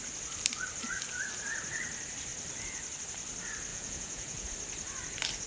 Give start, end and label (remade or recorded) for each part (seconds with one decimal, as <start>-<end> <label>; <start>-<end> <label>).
0.0-3.7 recorded; 3.7-4.5 remade; 4.5-5.5 recorded